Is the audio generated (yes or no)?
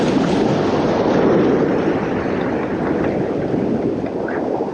no